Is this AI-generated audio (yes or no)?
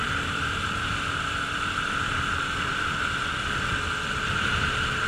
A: yes